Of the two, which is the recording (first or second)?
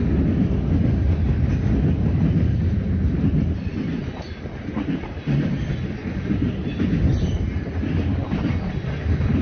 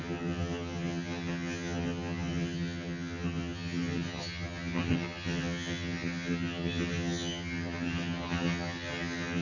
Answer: first